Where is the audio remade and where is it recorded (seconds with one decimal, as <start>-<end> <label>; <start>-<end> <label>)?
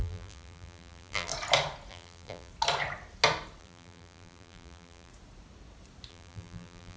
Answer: 0.0-1.3 remade; 1.3-1.9 recorded; 1.9-2.5 remade; 2.5-3.6 recorded; 3.6-5.1 remade; 5.1-6.1 recorded; 6.1-7.0 remade